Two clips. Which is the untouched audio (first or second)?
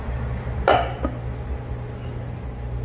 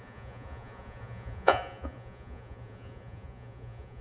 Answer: first